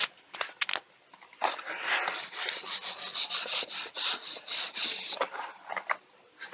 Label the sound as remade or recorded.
recorded